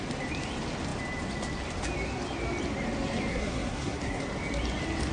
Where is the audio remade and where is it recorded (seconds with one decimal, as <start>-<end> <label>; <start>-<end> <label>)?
0.0-3.3 recorded; 3.3-4.2 remade; 4.2-5.1 recorded